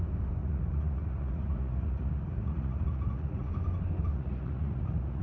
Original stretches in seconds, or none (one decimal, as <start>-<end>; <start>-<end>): 0.0-0.4; 3.5-4.1